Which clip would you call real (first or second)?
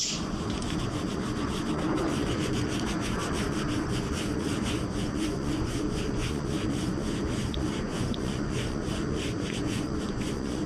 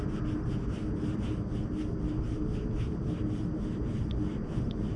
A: second